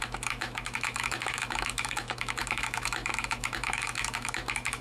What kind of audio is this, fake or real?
fake